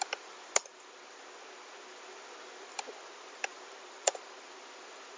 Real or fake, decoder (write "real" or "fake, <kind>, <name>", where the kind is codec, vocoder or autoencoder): real